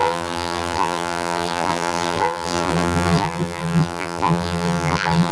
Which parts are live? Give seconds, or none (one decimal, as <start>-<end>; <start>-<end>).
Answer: none